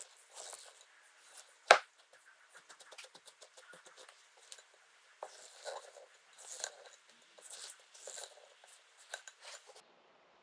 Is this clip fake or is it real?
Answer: real